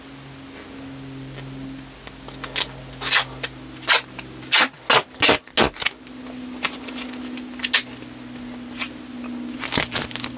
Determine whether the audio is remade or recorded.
recorded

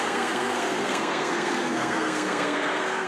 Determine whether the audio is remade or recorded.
remade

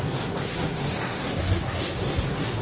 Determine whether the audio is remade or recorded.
remade